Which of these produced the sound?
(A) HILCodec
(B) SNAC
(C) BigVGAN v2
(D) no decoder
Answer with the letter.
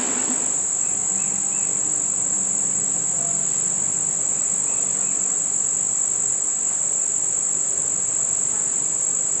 D